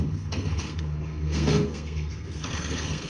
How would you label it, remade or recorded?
remade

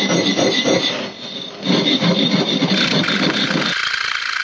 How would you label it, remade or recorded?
recorded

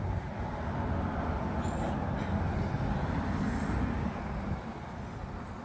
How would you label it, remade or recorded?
recorded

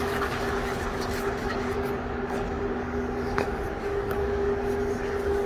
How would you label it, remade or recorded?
remade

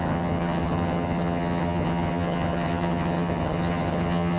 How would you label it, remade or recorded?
remade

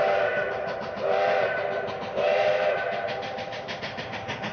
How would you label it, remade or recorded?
remade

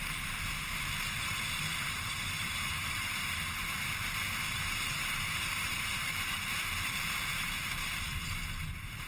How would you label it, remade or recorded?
remade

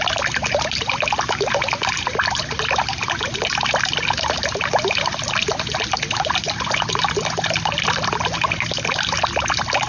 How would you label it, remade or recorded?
recorded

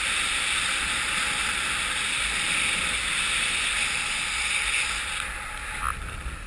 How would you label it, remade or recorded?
recorded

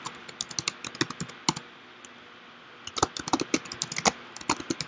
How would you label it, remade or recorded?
recorded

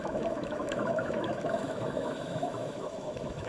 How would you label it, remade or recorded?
remade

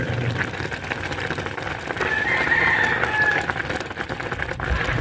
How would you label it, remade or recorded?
recorded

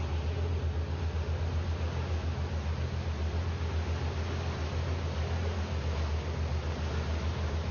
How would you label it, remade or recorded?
recorded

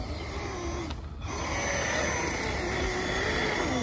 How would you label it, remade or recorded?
recorded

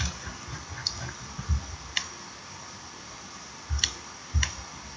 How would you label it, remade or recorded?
recorded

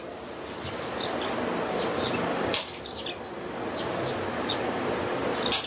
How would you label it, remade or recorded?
recorded